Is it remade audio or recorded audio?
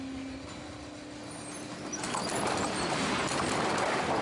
recorded